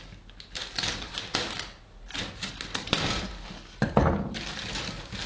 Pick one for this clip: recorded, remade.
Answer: recorded